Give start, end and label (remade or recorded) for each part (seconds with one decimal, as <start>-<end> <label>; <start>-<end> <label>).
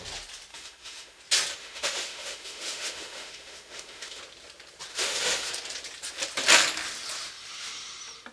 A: 0.0-0.5 recorded; 0.5-1.2 remade; 1.2-1.6 recorded; 1.6-4.2 remade; 4.2-4.9 recorded; 4.9-5.5 remade; 5.5-8.3 recorded